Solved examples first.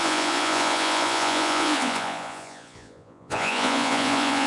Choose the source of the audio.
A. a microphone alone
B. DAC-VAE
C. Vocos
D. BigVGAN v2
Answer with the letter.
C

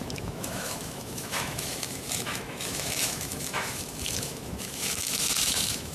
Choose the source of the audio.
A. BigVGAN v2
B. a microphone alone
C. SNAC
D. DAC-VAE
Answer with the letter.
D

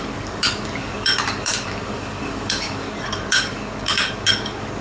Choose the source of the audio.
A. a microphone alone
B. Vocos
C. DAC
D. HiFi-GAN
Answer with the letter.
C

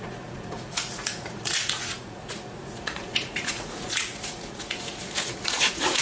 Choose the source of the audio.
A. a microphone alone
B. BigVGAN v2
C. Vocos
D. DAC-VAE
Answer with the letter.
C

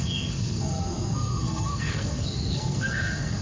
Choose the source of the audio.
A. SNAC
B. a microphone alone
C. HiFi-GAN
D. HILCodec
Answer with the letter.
A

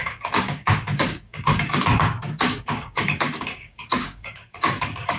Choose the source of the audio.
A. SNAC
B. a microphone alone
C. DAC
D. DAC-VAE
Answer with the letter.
C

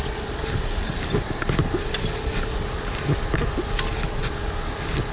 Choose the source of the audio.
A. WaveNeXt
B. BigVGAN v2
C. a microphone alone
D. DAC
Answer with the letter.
C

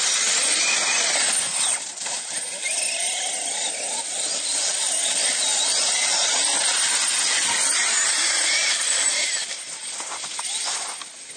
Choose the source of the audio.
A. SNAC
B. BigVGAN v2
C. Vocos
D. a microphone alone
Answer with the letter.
D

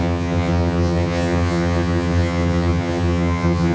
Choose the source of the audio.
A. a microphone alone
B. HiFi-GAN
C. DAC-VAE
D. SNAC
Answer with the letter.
B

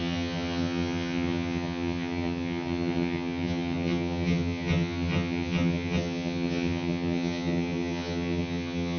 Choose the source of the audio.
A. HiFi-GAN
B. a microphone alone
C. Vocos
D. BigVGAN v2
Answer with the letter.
A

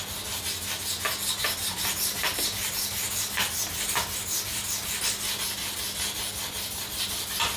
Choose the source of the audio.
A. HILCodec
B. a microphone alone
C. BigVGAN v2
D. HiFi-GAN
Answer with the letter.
B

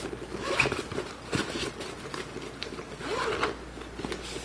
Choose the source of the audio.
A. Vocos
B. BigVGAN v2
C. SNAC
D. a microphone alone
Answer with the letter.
D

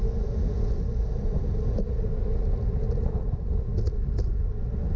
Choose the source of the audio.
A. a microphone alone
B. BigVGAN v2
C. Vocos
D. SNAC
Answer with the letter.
A